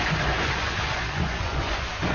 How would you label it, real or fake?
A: fake